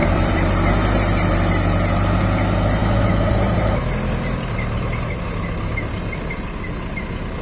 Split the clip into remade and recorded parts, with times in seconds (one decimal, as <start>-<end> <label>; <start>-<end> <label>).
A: 0.0-0.5 remade; 0.5-2.8 recorded; 2.8-3.8 remade; 3.8-7.4 recorded